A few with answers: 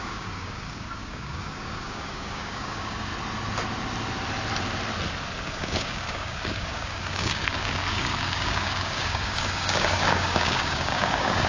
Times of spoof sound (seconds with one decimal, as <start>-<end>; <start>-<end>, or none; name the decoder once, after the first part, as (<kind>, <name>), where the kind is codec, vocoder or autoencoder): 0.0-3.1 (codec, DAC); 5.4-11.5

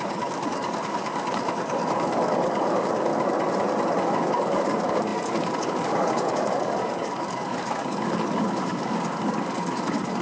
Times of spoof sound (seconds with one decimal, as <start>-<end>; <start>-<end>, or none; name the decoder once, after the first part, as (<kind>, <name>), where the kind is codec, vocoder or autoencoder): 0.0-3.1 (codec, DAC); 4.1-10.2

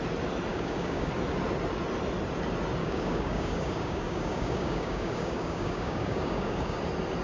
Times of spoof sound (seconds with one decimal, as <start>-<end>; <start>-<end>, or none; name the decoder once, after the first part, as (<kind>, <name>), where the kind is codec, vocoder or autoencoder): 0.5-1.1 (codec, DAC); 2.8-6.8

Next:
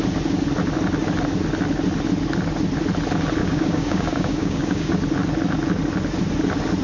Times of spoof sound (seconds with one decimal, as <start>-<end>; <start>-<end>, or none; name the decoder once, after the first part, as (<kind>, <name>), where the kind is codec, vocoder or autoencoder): 3.4-4.9 (codec, DAC)